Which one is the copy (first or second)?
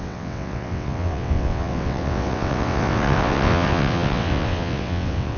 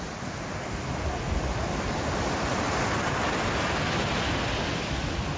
first